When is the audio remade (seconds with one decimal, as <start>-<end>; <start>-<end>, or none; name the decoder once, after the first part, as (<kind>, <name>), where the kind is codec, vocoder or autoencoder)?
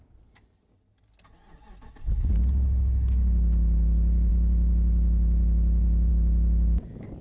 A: none